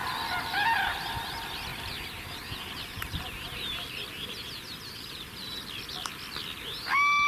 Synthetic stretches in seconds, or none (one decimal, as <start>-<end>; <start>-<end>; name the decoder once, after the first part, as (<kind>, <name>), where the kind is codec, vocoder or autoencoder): 1.7-3.7 (vocoder, BigVGAN v2)